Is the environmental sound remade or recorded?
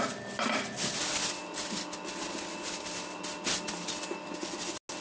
recorded